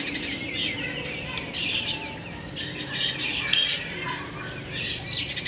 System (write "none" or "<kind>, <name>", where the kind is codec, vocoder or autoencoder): none